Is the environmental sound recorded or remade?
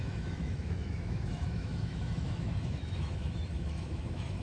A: remade